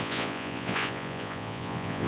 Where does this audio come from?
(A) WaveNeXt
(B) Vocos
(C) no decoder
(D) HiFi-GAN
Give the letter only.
B